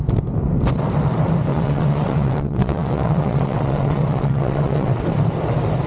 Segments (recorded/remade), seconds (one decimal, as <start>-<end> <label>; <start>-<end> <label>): 0.0-1.5 recorded; 1.5-5.0 remade; 5.0-5.9 recorded